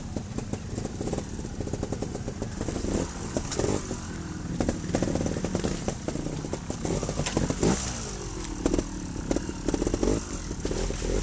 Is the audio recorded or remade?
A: recorded